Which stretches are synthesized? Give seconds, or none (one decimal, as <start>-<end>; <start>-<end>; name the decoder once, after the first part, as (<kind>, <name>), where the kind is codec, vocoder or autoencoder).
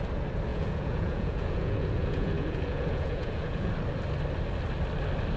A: 0.5-3.7 (vocoder, Vocos)